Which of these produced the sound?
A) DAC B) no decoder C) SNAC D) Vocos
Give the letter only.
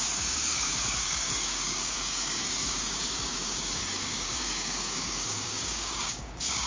A